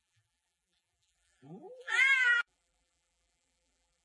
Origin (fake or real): fake